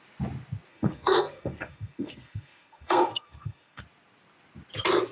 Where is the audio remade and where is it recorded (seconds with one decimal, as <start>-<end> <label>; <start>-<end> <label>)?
0.0-0.7 recorded; 0.7-3.8 remade; 3.8-5.1 recorded